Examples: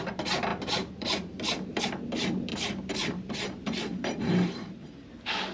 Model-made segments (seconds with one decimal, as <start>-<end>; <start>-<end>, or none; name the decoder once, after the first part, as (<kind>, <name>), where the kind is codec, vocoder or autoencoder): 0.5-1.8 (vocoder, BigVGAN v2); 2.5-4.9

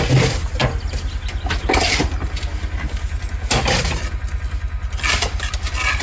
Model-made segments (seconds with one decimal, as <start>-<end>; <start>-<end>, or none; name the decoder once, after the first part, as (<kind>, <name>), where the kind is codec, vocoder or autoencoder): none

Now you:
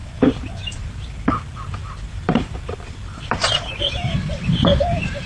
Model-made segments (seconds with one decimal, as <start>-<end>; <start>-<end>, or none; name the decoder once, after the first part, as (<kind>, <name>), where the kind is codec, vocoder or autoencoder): 0.0-1.3 (vocoder, BigVGAN v2); 1.8-5.3

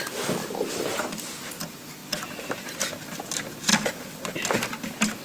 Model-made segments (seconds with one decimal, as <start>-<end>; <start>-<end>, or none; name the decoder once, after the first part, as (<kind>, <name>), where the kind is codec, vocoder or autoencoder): none